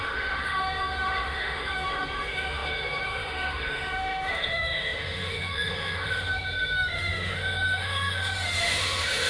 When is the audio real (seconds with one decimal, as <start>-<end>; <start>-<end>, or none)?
none